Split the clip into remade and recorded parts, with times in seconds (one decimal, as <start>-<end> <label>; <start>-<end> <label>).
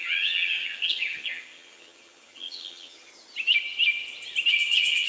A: 0.0-3.1 remade; 3.1-4.5 recorded; 4.5-5.1 remade